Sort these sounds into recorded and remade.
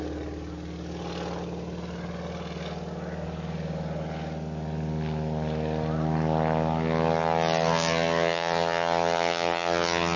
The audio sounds recorded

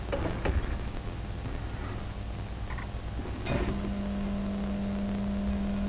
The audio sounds recorded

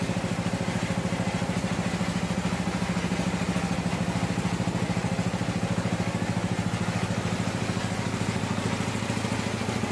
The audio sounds recorded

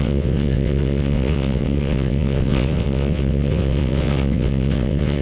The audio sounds remade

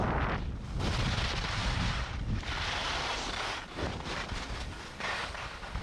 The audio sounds recorded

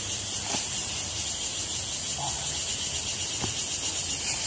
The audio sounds recorded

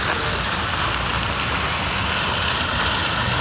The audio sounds recorded